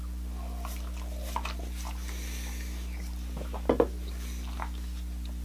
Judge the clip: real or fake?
real